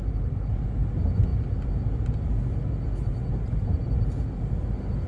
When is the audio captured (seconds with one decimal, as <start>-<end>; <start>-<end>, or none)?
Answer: 0.0-5.1